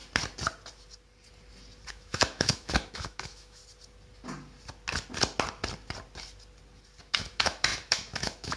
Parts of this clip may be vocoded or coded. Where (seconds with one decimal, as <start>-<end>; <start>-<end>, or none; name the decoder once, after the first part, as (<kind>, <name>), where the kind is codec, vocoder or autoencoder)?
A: 1.9-3.6 (autoencoder, DAC-VAE); 7.0-8.6